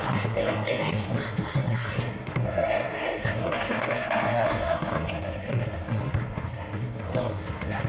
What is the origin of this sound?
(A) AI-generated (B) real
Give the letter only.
A